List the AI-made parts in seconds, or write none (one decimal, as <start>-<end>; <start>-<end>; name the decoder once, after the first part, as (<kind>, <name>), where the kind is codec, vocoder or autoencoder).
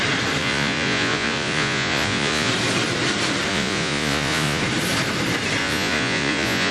0.4-2.5 (vocoder, Vocos); 3.5-4.6; 5.6-6.7